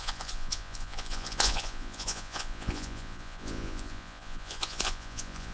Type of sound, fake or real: fake